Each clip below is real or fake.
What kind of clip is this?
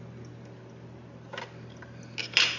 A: real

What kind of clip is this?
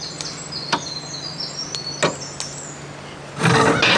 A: real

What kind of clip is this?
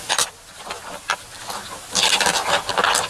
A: real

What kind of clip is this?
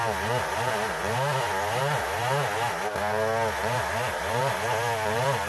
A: real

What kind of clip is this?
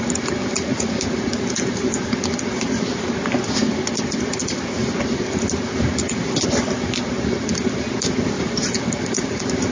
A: real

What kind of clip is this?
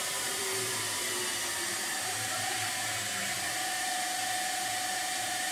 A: fake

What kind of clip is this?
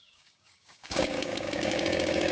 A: fake